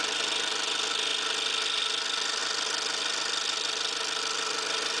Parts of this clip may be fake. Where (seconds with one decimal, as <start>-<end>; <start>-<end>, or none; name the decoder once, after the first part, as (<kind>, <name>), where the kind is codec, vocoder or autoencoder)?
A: none